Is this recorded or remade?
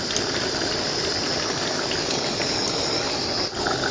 recorded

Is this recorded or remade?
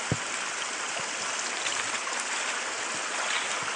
recorded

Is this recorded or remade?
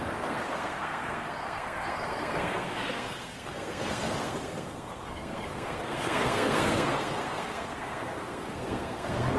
remade